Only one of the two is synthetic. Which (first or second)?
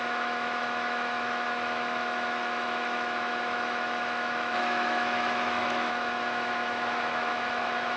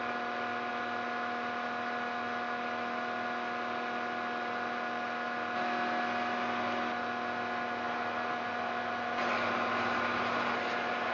first